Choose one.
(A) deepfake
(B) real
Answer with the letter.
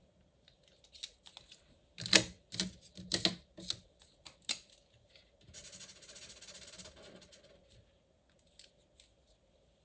B